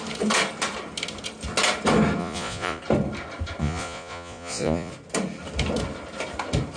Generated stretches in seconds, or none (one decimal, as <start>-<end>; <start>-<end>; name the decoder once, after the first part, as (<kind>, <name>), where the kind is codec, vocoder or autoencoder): 2.2-2.8 (vocoder, Vocos); 3.6-4.9